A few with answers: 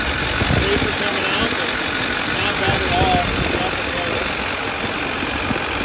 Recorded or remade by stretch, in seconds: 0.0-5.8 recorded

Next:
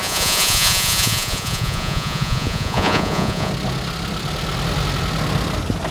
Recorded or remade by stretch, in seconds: 0.0-3.5 remade; 3.5-5.9 recorded

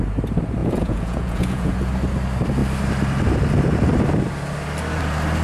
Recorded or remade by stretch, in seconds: 0.0-0.6 recorded; 0.6-1.7 remade; 1.7-5.4 recorded

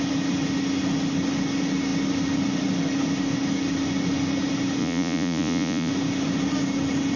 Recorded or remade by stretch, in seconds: 0.0-4.8 recorded; 4.8-5.9 remade; 5.9-7.2 recorded

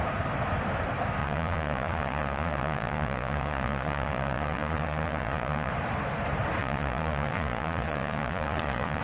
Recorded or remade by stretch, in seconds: 0.0-1.2 recorded; 1.2-5.7 remade; 5.7-6.6 recorded; 6.6-9.0 remade

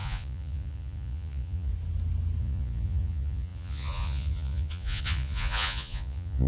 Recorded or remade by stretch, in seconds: 0.0-1.7 remade; 1.7-2.4 recorded; 2.4-6.5 remade

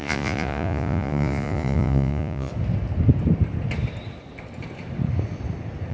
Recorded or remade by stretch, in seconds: 0.0-2.5 remade; 2.5-5.9 recorded